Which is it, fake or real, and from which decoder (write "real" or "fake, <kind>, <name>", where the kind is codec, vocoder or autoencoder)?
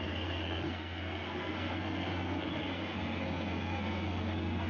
fake, codec, SNAC